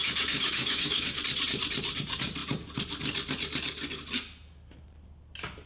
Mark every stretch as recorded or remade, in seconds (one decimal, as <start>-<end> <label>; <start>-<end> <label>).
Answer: 0.0-1.2 remade; 1.2-5.7 recorded